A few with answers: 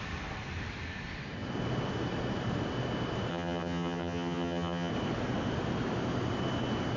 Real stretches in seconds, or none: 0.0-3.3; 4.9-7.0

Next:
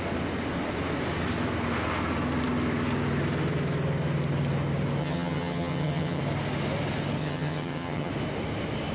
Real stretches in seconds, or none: 0.0-5.0; 6.2-7.2; 8.1-8.9

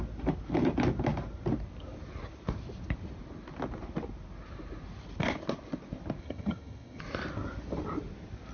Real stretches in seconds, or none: 0.0-6.2; 7.0-8.5

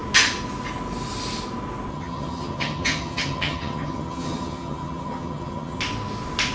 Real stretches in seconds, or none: 0.0-1.9; 5.8-6.5

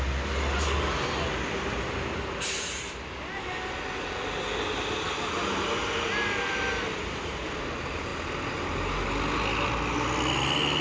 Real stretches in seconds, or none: 0.0-10.8

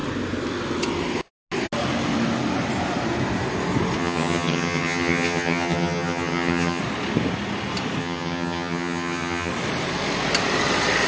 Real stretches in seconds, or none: 0.0-4.0; 6.8-8.0; 9.5-11.1

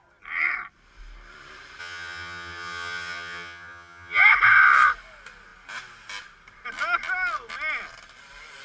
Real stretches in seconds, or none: 0.0-1.8; 4.2-8.6

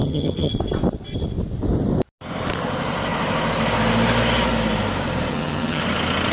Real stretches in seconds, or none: 0.5-5.3; 5.8-6.3